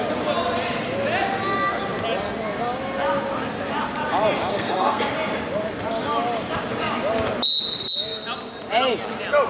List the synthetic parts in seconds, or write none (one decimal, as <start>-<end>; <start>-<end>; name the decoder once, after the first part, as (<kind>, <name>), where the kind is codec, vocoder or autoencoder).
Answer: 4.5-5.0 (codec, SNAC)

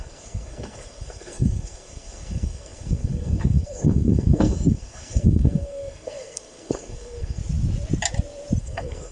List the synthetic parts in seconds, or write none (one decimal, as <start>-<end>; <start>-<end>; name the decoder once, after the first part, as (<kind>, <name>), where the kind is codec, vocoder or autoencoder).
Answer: 0.0-7.4 (codec, SNAC); 8.6-9.1

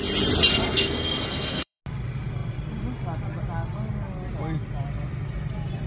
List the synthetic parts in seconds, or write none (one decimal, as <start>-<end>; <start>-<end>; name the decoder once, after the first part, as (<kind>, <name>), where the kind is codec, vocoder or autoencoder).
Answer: 0.5-1.8 (codec, SNAC)

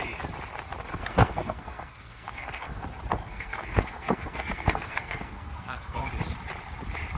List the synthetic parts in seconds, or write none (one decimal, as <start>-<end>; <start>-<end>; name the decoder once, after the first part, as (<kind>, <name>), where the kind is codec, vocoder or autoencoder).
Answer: 0.9-2.8 (codec, SNAC); 3.2-6.1

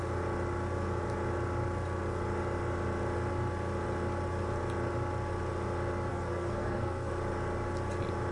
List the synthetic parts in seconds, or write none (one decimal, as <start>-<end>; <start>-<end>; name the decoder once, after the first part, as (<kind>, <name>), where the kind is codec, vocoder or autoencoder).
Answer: 6.1-7.1 (codec, SNAC)

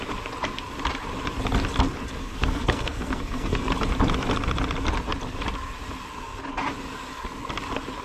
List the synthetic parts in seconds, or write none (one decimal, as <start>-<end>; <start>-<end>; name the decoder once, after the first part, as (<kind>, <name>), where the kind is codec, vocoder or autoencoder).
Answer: 2.2-3.7 (codec, SNAC)